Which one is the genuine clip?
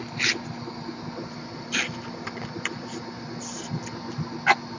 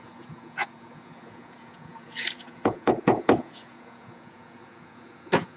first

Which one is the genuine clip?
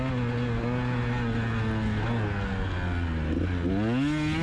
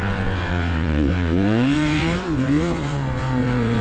first